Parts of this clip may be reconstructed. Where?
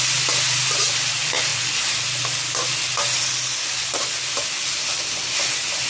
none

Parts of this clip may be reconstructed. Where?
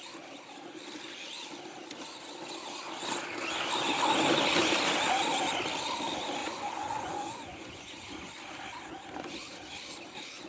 6.4-8.3 (vocoder, Vocos)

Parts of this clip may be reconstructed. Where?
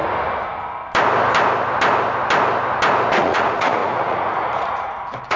3.2-5.4 (vocoder, Vocos)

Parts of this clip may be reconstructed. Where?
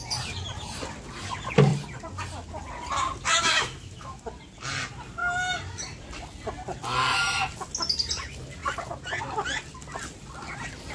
3.3-4.2 (autoencoder, DAC-VAE)